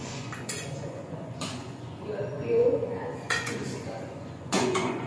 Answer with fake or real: fake